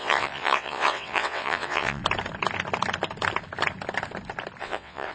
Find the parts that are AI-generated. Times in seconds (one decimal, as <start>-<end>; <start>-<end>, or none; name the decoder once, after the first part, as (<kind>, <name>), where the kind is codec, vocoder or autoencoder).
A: 0.0-2.0 (vocoder, WaveNeXt); 4.6-5.1